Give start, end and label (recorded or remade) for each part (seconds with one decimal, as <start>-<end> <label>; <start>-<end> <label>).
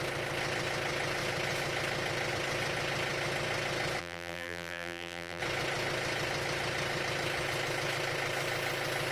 0.0-4.0 recorded; 4.0-5.4 remade; 5.4-9.1 recorded